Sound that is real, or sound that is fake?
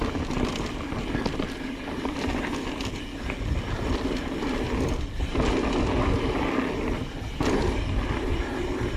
real